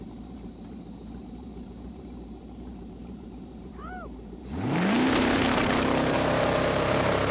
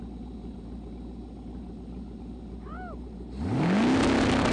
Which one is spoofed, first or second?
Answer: first